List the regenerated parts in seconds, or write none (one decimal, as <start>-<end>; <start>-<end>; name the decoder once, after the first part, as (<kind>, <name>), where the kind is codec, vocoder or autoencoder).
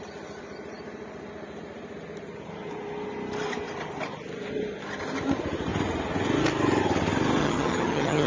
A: 7.4-8.3 (vocoder, HiFi-GAN)